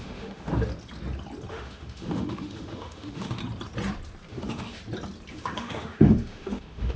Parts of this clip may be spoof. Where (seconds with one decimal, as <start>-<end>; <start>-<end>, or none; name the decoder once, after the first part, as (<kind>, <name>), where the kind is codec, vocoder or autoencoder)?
0.0-0.5 (autoencoder, DAC-VAE); 1.5-3.4; 4.3-4.8; 5.3-7.0